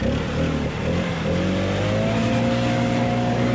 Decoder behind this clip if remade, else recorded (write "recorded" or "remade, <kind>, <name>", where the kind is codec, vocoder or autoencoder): recorded